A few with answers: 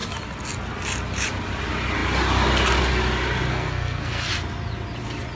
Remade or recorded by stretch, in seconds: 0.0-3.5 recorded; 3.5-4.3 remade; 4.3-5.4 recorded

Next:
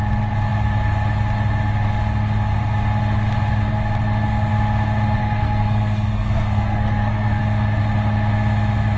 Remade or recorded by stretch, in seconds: 0.0-5.2 recorded; 5.2-7.4 remade; 7.4-9.0 recorded

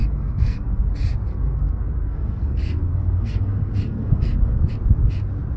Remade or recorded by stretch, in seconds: 0.0-0.9 remade; 0.9-1.3 recorded; 1.3-4.7 remade; 4.7-5.6 recorded

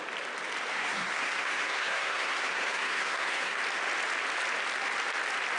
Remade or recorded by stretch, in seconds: 0.0-0.7 recorded; 0.7-3.6 remade; 3.6-5.6 recorded